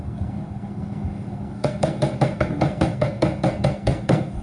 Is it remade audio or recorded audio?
remade